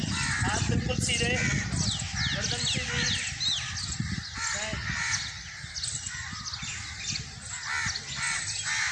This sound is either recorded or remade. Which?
recorded